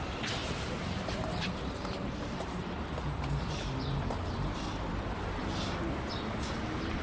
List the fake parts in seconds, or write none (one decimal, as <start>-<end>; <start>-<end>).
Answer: 0.4-4.3